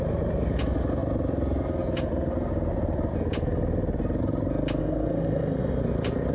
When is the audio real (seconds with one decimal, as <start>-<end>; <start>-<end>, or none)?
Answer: 0.0-4.8; 5.8-6.3